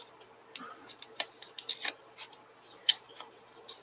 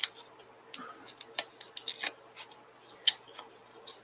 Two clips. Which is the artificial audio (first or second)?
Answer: first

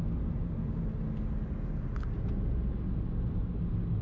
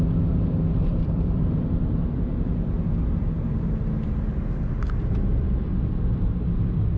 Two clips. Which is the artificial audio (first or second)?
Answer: second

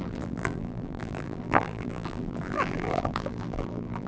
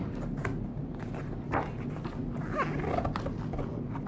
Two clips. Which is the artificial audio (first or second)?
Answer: first